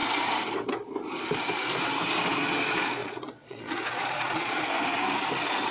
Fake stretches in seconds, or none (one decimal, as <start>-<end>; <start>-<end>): 3.0-4.6